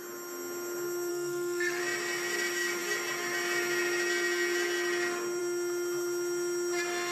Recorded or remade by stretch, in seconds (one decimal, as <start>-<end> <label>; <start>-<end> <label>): 0.0-1.1 recorded; 1.1-1.8 remade; 1.8-7.1 recorded